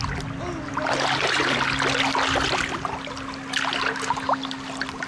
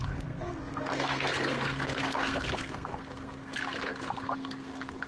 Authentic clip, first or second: first